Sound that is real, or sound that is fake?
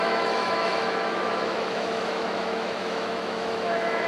fake